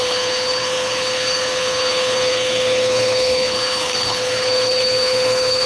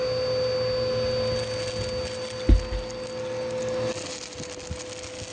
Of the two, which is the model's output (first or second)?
first